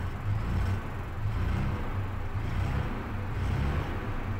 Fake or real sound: real